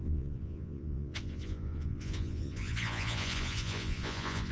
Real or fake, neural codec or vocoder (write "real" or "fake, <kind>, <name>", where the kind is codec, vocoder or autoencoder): fake, vocoder, Vocos